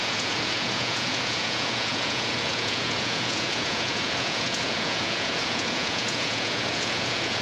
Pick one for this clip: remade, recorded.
remade